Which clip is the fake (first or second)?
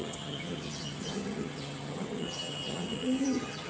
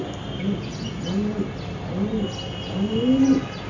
first